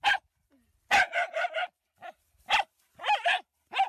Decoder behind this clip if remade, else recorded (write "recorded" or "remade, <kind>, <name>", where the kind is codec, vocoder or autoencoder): recorded